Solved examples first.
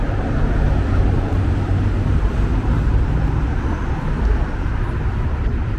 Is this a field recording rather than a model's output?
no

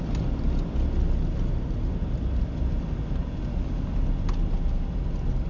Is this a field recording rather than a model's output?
yes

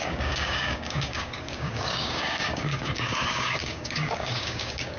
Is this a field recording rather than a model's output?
no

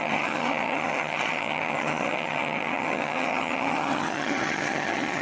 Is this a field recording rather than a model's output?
no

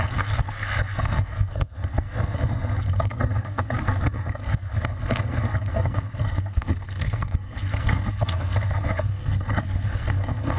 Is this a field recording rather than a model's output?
no